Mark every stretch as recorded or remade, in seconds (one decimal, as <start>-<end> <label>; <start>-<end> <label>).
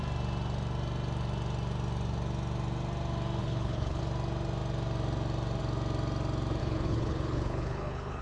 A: 0.0-3.4 recorded; 3.4-4.0 remade; 4.0-6.6 recorded; 6.6-8.2 remade